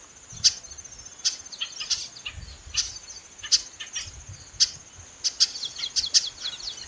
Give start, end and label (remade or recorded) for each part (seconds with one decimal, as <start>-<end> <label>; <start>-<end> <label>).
0.0-6.9 recorded